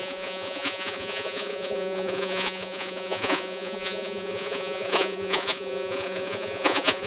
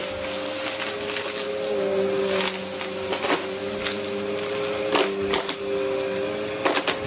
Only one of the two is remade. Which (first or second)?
first